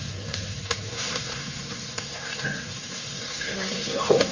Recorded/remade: remade